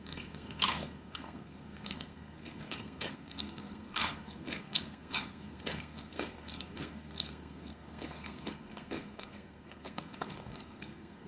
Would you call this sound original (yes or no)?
no